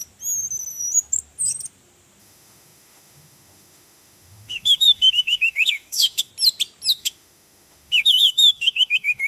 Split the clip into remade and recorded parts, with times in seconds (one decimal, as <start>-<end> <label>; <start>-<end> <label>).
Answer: 0.0-2.2 recorded; 2.2-6.3 remade; 6.3-6.9 recorded; 6.9-9.3 remade